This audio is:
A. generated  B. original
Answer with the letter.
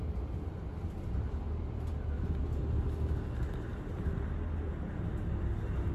B